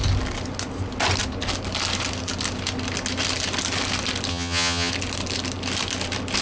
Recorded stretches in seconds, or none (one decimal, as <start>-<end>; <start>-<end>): 0.0-4.3; 4.9-6.4